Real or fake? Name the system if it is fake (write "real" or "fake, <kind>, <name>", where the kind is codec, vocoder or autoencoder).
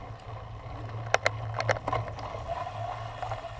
real